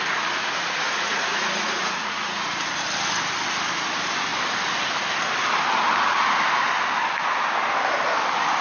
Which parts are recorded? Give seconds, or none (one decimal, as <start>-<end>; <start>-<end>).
0.0-0.4; 2.7-8.6